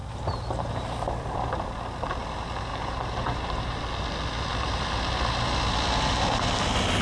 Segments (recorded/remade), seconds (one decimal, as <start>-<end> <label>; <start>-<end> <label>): 0.0-1.4 remade; 1.4-2.7 recorded; 2.7-3.8 remade; 3.8-7.0 recorded